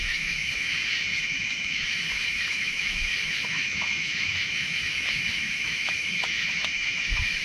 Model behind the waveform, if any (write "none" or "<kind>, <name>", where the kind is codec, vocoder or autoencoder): autoencoder, DAC-VAE